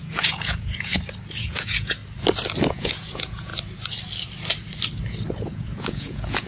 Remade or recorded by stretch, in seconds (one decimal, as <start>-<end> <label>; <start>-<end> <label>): 0.0-0.9 remade; 0.9-1.4 recorded; 1.4-2.0 remade; 2.0-2.7 recorded; 2.7-3.5 remade; 3.5-5.3 recorded; 5.3-6.5 remade